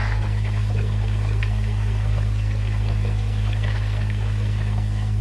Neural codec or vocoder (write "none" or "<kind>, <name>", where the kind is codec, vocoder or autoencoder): codec, SNAC